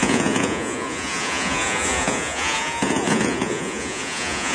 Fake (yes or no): yes